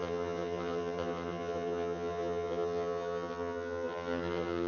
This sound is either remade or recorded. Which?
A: remade